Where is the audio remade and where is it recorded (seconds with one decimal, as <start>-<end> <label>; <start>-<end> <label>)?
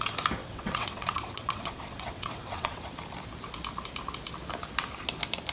0.0-0.4 recorded; 0.4-3.0 remade; 3.0-5.5 recorded